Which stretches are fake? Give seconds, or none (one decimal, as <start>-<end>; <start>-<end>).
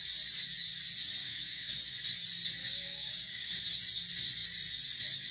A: 1.2-1.8; 2.6-3.6